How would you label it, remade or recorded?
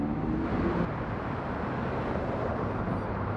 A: recorded